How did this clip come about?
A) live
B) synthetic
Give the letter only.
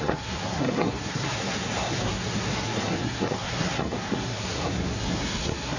B